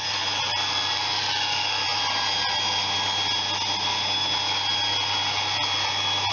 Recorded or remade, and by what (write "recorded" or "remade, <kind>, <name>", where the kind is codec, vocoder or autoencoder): recorded